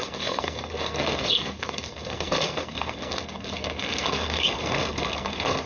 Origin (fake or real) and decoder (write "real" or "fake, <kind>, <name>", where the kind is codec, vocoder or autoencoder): fake, codec, SNAC